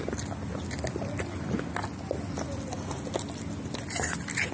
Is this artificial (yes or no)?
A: no